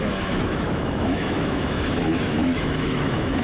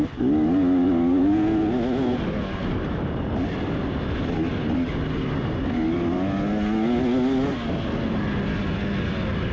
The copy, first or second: first